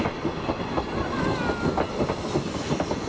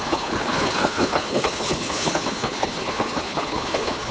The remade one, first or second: second